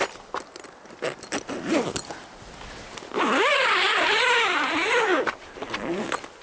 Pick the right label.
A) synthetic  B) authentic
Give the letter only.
B